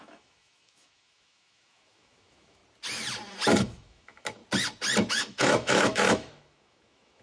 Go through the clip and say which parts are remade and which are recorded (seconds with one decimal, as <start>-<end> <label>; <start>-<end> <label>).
0.0-2.6 remade; 2.6-3.6 recorded; 3.6-4.4 remade; 4.4-5.1 recorded; 5.1-7.2 remade